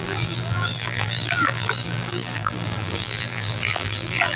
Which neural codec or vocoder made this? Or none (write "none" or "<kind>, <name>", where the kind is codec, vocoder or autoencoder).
vocoder, BigVGAN v2